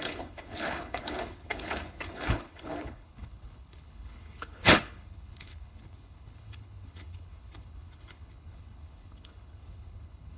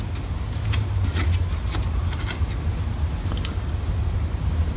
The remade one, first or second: first